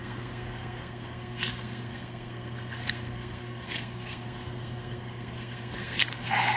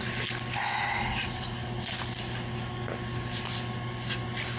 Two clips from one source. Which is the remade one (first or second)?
first